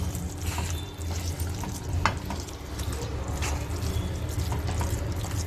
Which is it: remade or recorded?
recorded